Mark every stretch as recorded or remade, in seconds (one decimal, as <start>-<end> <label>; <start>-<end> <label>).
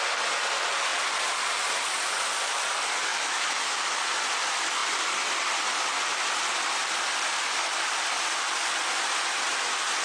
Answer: 0.0-3.1 recorded; 3.1-3.9 remade; 3.9-10.0 recorded